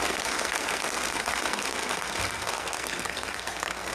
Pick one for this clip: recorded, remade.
remade